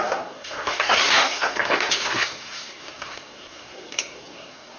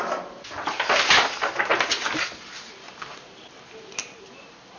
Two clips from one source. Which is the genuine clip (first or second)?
second